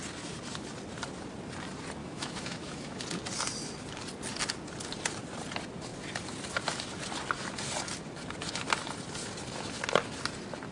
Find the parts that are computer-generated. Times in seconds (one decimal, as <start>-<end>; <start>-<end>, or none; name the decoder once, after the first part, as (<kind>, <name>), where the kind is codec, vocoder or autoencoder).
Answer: 2.0-3.0 (autoencoder, DAC-VAE)